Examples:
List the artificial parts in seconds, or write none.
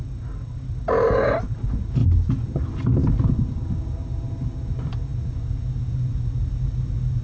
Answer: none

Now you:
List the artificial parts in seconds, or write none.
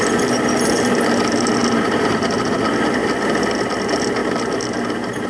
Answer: none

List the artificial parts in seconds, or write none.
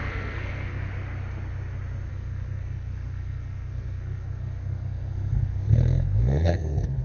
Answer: 0.0-0.9 (codec, SNAC); 2.1-7.0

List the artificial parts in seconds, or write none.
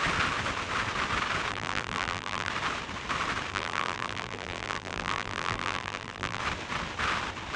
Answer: 1.5-2.5 (vocoder, BigVGAN v2); 3.5-6.4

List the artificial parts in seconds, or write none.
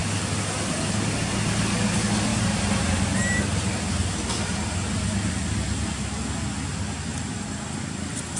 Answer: 2.3-4.9 (vocoder, BigVGAN v2); 7.1-7.8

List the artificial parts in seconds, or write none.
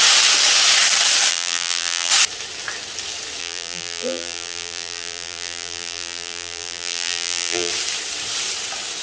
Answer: 1.3-2.1 (vocoder, BigVGAN v2); 3.4-7.7